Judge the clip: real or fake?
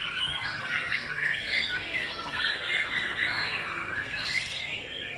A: fake